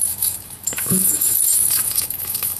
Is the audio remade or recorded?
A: remade